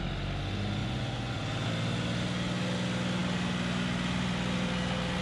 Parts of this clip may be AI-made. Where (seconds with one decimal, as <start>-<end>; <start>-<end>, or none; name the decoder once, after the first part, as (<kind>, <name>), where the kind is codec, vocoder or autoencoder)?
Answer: 0.8-1.4 (vocoder, Vocos)